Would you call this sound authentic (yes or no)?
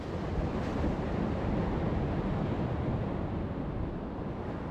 yes